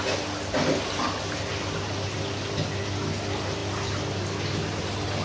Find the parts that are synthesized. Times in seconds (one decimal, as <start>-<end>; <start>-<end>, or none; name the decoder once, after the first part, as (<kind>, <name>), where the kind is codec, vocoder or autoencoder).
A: none